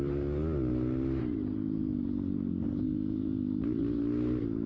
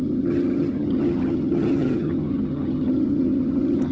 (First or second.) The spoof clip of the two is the second